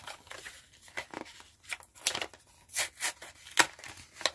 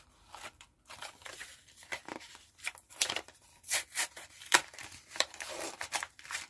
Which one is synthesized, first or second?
second